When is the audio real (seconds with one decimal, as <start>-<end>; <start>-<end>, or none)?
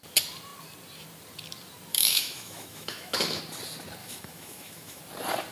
0.0-1.9; 3.4-4.0; 5.0-5.5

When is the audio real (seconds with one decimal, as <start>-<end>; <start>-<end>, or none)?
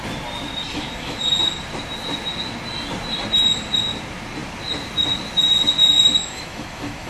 0.0-0.7; 1.2-6.2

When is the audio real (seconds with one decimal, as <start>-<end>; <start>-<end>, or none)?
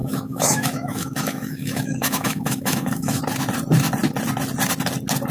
3.2-5.3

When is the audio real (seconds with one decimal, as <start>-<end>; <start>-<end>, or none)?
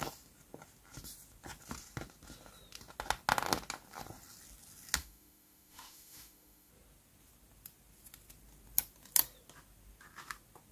0.0-5.0; 6.7-10.7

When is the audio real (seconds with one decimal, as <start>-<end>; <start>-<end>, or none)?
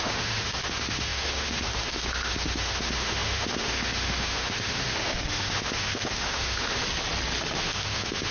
6.8-7.6